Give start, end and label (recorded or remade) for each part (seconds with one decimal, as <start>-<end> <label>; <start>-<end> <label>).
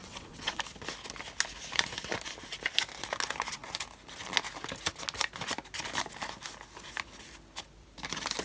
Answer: 0.0-0.6 remade; 0.6-8.4 recorded